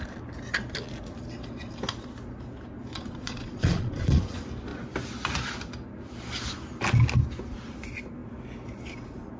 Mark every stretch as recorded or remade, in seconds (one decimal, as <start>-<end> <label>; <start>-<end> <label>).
0.0-2.9 recorded; 2.9-4.2 remade; 4.2-9.4 recorded

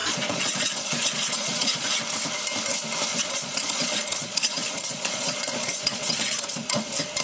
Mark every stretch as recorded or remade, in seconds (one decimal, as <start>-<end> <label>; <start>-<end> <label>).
0.0-2.0 remade; 2.0-3.1 recorded; 3.1-6.8 remade; 6.8-7.2 recorded

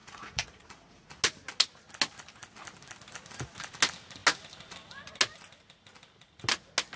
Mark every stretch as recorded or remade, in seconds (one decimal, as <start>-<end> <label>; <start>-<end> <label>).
0.0-1.1 remade; 1.1-7.0 recorded

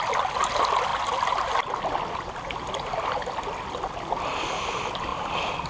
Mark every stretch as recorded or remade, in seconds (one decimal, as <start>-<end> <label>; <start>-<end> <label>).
0.0-5.7 recorded

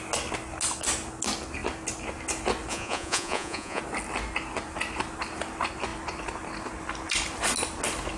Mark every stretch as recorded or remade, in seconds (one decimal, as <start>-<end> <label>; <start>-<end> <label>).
0.0-2.7 recorded; 2.7-3.8 remade; 3.8-8.2 recorded